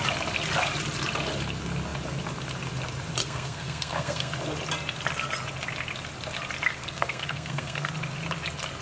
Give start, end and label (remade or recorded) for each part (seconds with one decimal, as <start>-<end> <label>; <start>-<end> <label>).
0.0-3.2 recorded; 3.2-4.3 remade; 4.3-6.8 recorded; 6.8-7.9 remade; 7.9-8.8 recorded